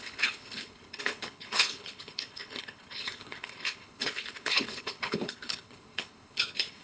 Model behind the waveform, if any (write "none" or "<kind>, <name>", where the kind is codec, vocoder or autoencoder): codec, HILCodec